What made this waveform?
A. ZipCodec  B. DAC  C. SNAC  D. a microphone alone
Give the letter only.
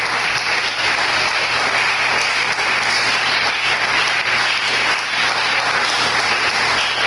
D